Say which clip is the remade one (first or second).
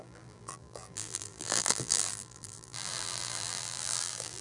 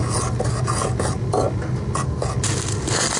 first